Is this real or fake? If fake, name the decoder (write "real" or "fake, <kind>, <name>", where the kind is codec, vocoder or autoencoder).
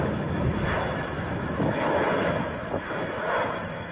fake, autoencoder, DAC-VAE